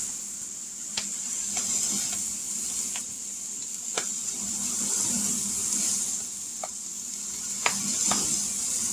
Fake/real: real